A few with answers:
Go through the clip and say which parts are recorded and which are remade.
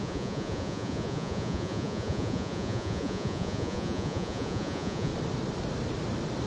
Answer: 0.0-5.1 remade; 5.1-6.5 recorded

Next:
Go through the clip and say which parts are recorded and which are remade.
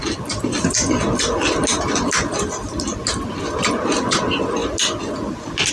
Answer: 0.0-5.7 recorded